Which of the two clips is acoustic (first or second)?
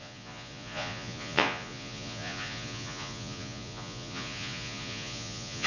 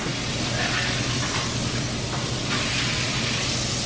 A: second